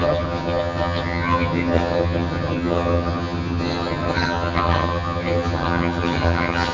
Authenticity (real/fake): fake